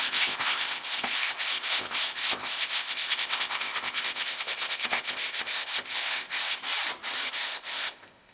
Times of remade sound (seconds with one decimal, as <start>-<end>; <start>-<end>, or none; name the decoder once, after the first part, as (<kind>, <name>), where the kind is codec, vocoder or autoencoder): 0.0-6.6 (codec, ZipCodec); 7.3-8.3